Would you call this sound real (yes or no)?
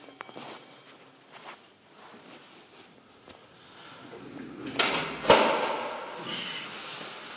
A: yes